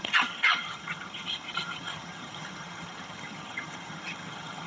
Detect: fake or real fake